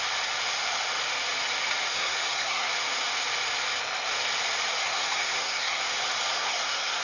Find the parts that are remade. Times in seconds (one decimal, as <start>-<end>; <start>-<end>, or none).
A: 1.9-2.7; 4.8-5.8; 6.3-7.0